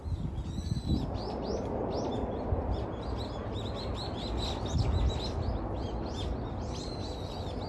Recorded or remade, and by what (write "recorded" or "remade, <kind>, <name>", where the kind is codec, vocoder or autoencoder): recorded